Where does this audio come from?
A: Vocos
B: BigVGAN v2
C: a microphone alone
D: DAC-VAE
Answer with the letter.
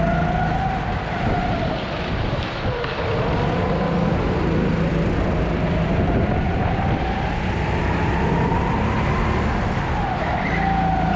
C